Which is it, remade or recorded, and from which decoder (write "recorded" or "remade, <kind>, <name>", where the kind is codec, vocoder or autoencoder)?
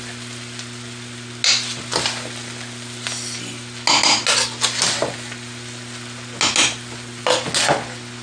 recorded